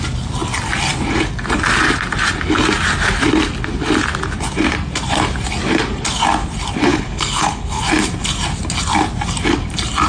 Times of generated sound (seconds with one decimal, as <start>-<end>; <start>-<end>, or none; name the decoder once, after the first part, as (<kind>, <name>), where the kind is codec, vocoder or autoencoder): 6.9-7.8 (codec, HILCodec)